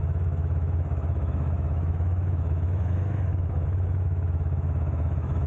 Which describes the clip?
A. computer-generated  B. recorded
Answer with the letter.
A